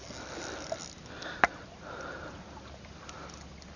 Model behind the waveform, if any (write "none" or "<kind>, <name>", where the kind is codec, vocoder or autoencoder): none